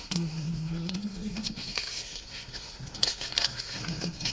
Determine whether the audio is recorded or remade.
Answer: remade